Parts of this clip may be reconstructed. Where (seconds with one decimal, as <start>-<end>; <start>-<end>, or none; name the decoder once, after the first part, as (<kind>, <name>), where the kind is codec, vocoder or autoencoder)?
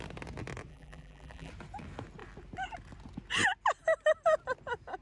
0.7-1.5 (vocoder, BigVGAN v2)